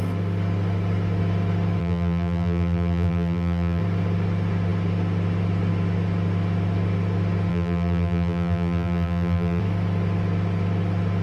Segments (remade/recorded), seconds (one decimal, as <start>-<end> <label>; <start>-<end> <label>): 0.0-1.8 recorded; 1.8-3.8 remade; 3.8-7.5 recorded; 7.5-9.6 remade; 9.6-11.2 recorded